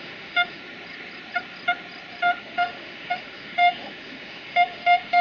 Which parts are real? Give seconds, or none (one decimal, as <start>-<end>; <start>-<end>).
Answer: 0.6-2.4